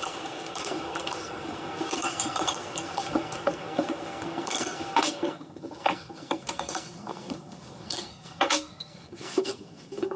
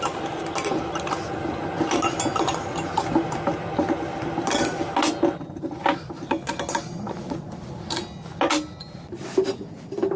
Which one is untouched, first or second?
second